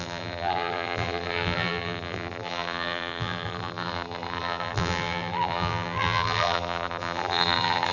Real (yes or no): no